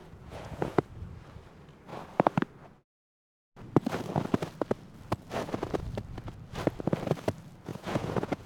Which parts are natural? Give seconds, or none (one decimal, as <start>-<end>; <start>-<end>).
0.8-7.7

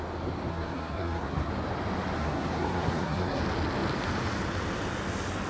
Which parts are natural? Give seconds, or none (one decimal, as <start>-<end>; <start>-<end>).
0.0-0.5; 1.5-2.2; 3.4-5.5

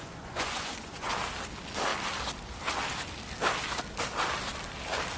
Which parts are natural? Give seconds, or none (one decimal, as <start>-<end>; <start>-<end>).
1.1-5.2

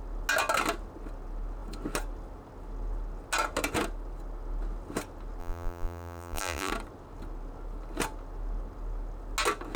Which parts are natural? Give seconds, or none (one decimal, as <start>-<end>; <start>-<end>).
0.0-5.4; 6.7-9.8

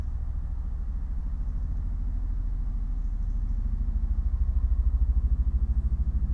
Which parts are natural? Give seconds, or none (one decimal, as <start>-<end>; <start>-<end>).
0.0-6.3

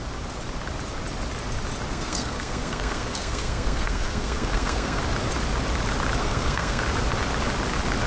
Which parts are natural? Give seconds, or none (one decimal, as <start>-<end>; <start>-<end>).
0.0-1.9; 5.0-6.2; 6.8-8.1

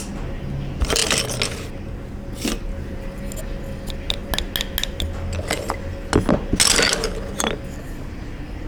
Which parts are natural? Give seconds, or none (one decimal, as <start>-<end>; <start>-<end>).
0.0-8.7

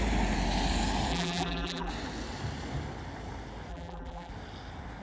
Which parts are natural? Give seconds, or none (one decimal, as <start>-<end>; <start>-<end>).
0.0-1.1; 1.9-3.7; 4.3-5.0